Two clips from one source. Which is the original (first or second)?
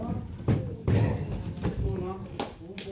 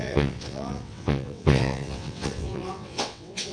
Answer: first